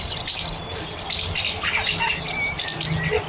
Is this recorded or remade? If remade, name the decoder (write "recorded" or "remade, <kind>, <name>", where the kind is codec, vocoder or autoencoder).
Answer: recorded